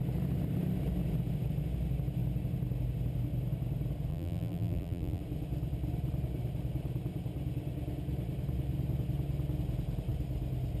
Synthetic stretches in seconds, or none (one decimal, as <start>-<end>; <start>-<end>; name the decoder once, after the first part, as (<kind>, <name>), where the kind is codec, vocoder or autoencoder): 4.1-5.2 (vocoder, BigVGAN v2)

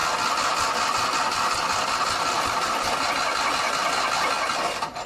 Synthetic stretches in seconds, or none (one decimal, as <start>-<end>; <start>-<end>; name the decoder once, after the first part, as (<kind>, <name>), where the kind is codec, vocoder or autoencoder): none

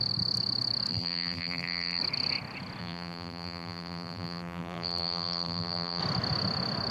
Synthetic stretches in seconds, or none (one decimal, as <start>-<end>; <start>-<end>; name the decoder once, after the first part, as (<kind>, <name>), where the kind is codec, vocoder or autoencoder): 0.9-2.0 (vocoder, BigVGAN v2); 2.8-6.0

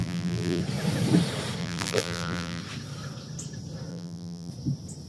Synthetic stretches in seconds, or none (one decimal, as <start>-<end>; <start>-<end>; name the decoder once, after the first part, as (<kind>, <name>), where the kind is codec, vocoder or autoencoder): 0.0-0.6 (vocoder, BigVGAN v2); 1.6-2.6; 3.9-4.5

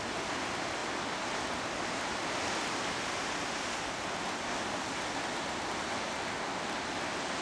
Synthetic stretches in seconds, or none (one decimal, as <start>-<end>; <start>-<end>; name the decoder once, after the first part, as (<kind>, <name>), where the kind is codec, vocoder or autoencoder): none

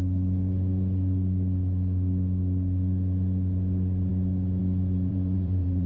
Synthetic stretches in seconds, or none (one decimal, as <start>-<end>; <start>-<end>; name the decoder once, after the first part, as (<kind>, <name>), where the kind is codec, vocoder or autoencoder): 5.1-5.9 (vocoder, BigVGAN v2)